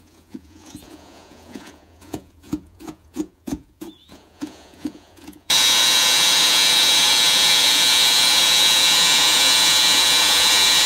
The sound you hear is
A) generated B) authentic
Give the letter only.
A